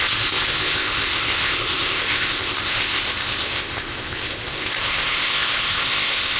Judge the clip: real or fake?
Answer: fake